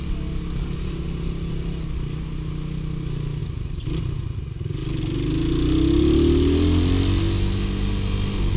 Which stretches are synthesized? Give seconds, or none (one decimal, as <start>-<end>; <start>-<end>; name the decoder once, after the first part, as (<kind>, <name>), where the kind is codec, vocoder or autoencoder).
none